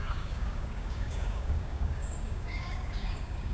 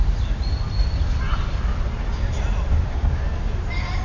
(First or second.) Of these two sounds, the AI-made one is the first